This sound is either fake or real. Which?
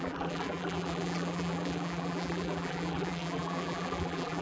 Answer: fake